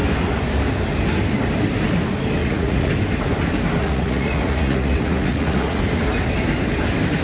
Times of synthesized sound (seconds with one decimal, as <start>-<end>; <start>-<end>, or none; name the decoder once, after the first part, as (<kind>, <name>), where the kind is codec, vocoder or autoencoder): 2.4-2.9 (vocoder, Vocos); 3.8-5.8